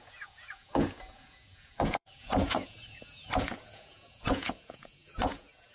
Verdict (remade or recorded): remade